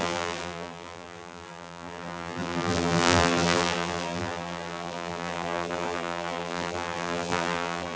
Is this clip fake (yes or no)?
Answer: yes